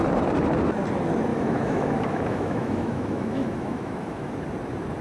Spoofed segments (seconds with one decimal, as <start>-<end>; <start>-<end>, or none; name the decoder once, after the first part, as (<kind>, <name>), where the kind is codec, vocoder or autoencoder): 1.3-4.3 (autoencoder, DAC-VAE)